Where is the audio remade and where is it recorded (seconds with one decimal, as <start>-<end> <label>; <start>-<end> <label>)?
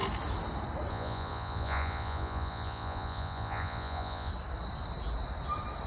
0.0-0.9 recorded; 0.9-4.3 remade; 4.3-5.9 recorded